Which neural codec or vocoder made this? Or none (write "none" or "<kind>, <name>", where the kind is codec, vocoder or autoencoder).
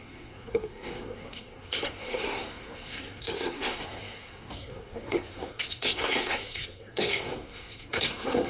codec, SNAC